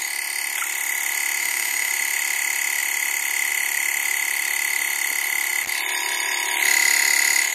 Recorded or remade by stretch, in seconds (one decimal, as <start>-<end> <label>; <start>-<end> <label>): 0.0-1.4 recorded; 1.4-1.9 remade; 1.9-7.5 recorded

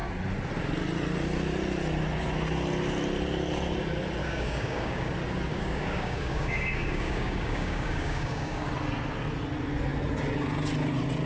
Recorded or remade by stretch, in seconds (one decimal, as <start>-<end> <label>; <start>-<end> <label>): 0.0-4.2 recorded; 4.2-5.1 remade; 5.1-5.5 recorded; 5.5-8.7 remade; 8.7-11.3 recorded

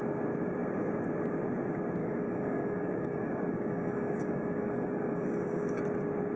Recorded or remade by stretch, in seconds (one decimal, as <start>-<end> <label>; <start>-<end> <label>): 0.0-2.0 recorded; 2.0-5.8 remade; 5.8-6.4 recorded